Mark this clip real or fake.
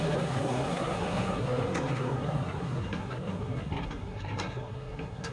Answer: fake